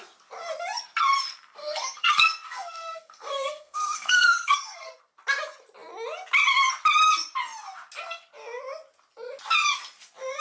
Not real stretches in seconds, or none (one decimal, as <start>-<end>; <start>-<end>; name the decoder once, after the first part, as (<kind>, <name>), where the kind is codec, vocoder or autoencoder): 1.6-5.0 (codec, SNAC)